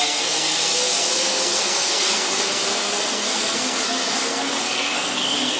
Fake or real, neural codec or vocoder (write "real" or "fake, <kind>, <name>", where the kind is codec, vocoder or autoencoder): fake, codec, SNAC